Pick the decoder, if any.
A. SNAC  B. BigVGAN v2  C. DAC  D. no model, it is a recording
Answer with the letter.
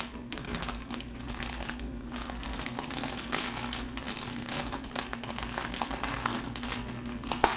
A